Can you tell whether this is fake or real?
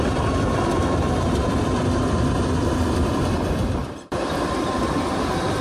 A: fake